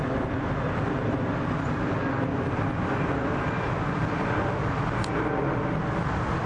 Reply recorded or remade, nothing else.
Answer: recorded